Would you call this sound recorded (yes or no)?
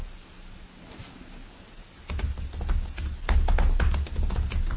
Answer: yes